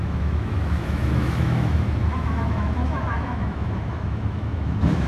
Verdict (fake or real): fake